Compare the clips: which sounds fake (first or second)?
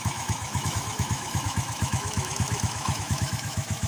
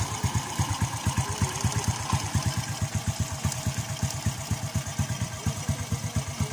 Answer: first